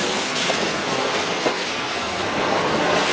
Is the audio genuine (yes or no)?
no